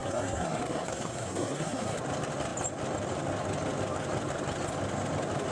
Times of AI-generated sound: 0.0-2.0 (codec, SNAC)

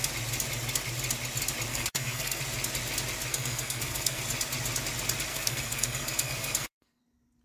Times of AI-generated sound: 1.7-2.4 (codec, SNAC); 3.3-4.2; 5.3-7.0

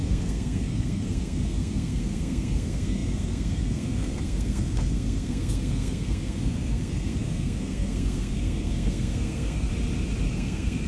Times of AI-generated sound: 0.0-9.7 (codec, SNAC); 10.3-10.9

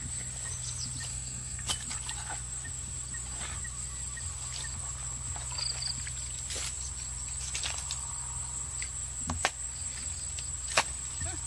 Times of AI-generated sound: 1.1-1.7 (codec, SNAC)